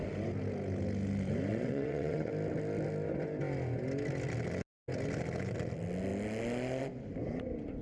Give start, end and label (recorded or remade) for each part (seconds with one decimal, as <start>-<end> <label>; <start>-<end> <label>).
0.0-1.5 recorded; 1.5-2.3 remade; 2.3-7.8 recorded